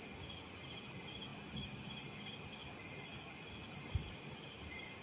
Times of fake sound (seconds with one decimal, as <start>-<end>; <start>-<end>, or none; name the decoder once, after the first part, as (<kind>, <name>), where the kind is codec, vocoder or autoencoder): none